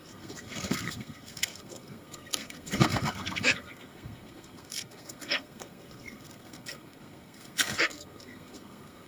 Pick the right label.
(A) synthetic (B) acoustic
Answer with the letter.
A